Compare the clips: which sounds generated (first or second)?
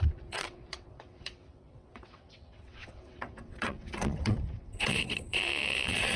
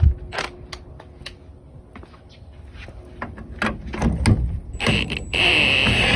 first